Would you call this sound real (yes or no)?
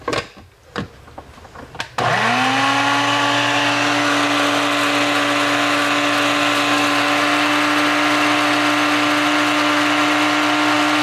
yes